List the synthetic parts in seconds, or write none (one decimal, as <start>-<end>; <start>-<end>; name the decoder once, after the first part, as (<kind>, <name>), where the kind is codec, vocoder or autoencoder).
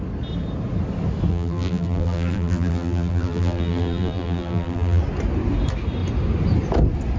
1.3-5.0 (vocoder, BigVGAN v2)